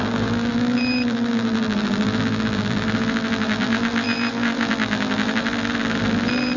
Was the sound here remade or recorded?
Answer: remade